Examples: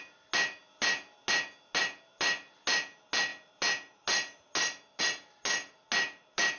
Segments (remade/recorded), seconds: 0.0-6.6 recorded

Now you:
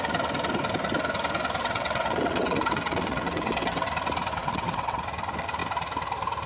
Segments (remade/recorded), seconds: 0.0-1.6 recorded; 1.6-3.9 remade; 3.9-4.4 recorded; 4.4-5.0 remade; 5.0-6.5 recorded

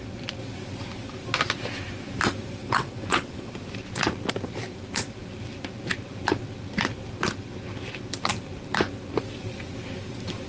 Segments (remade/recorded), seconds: 0.0-2.6 recorded; 2.6-3.6 remade; 3.6-10.5 recorded

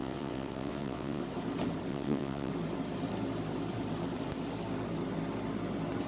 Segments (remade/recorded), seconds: 0.0-1.2 remade; 1.2-1.9 recorded; 1.9-2.5 remade; 2.5-6.1 recorded

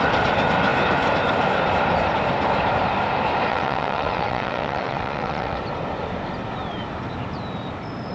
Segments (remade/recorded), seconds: 0.0-3.5 recorded; 3.5-5.6 remade; 5.6-8.1 recorded

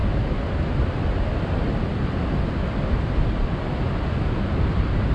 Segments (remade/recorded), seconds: 0.0-5.1 recorded

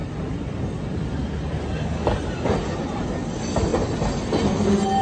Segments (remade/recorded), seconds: 0.0-5.0 recorded